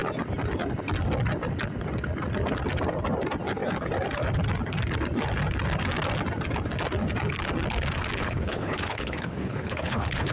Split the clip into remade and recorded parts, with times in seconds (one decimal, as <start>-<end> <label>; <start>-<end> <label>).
0.0-8.2 recorded; 8.2-10.3 remade